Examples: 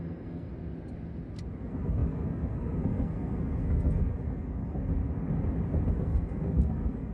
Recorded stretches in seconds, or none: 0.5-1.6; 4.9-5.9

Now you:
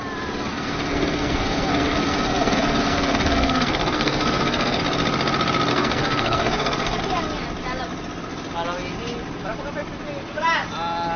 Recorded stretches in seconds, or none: 0.0-0.5; 4.8-5.7; 7.0-11.2

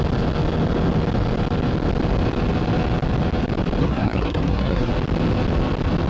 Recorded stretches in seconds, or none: 0.0-3.8; 4.9-6.1

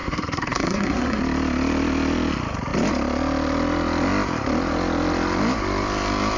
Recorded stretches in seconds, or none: 1.2-6.4

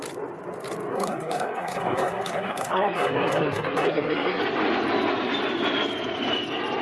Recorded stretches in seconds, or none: 0.0-0.9; 4.4-6.8

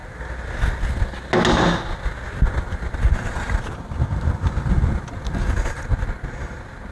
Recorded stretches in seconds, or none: 0.0-6.9